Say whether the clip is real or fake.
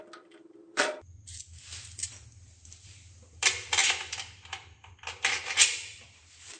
fake